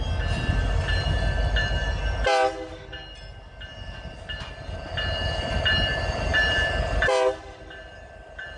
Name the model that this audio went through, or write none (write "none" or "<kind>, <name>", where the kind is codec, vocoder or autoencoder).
none